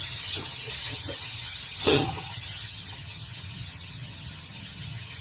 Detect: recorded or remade remade